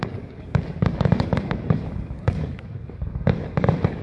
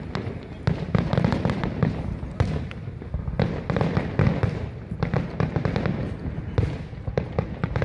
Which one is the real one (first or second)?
second